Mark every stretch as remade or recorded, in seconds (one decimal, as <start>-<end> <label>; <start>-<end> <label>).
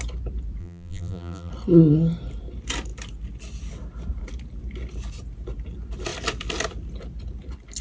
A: 0.0-0.6 recorded; 0.6-1.5 remade; 1.5-7.8 recorded